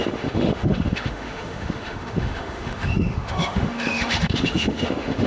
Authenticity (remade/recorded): remade